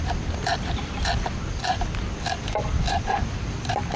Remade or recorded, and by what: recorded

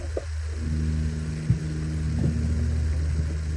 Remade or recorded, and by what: recorded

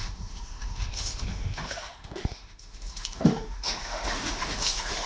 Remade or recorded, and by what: remade, autoencoder, DAC-VAE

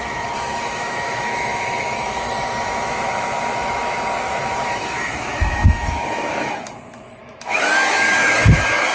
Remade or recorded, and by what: remade, autoencoder, DAC-VAE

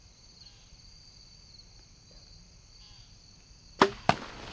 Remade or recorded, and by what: recorded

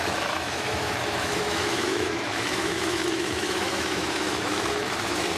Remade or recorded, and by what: remade, autoencoder, DAC-VAE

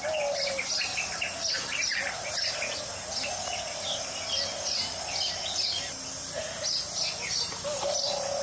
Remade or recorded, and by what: recorded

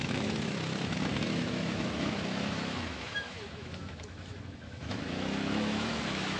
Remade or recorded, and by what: remade, autoencoder, DAC-VAE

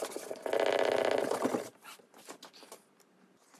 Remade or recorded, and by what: recorded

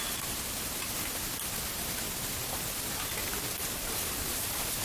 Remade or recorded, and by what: recorded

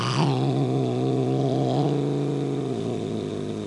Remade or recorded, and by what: recorded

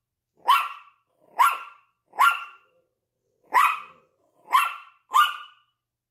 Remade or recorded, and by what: recorded